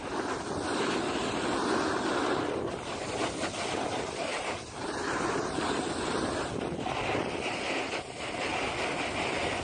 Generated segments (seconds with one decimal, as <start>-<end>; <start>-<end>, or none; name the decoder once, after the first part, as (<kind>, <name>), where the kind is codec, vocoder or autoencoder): 4.3-6.3 (vocoder, BigVGAN v2)